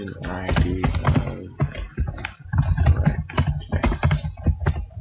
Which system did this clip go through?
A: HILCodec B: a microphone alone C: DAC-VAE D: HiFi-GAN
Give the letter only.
B